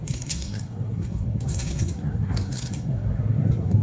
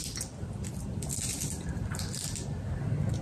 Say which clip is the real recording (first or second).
second